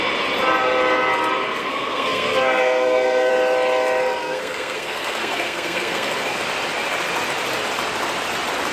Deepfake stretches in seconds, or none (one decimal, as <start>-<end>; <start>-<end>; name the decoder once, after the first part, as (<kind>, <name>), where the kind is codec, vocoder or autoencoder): 1.6-3.3 (codec, SNAC); 4.2-6.4